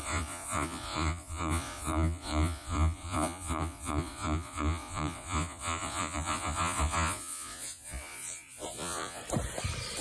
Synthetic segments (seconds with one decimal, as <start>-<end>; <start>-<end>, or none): 0.0-9.2